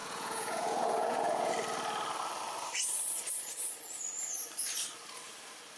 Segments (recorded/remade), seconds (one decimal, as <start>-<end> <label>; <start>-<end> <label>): 0.0-1.5 remade; 1.5-5.8 recorded